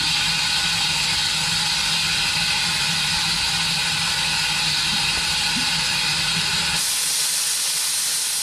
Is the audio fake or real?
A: real